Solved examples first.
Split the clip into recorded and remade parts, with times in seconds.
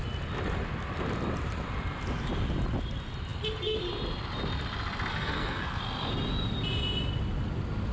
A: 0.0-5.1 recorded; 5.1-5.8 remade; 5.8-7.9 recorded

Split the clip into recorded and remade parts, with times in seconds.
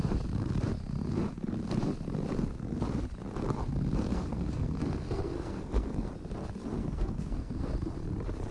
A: 0.0-4.1 recorded; 4.1-6.1 remade; 6.1-6.8 recorded; 6.8-7.7 remade; 7.7-8.5 recorded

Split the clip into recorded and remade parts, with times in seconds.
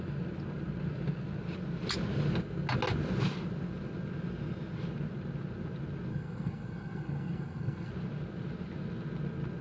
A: 0.0-6.1 recorded; 6.1-7.9 remade; 7.9-9.6 recorded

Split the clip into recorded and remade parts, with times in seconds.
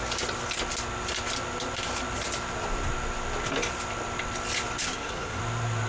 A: 0.0-4.8 recorded; 4.8-5.4 remade; 5.4-5.9 recorded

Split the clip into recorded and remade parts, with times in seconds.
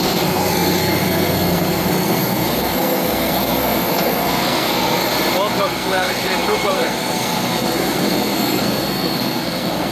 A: 0.0-5.1 remade; 5.1-5.6 recorded; 5.6-9.9 remade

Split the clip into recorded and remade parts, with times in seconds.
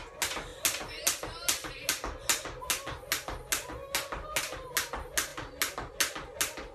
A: 0.0-6.7 recorded